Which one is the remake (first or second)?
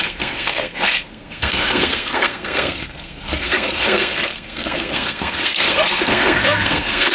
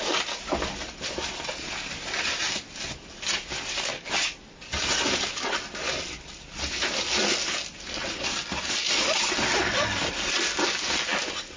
first